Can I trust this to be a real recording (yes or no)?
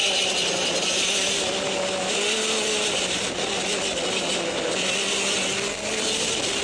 yes